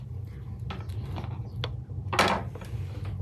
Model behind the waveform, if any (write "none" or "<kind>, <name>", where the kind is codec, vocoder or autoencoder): none